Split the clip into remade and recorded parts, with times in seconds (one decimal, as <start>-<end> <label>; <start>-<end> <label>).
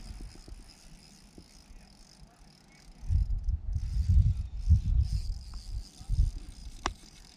0.0-6.6 recorded; 6.6-7.4 remade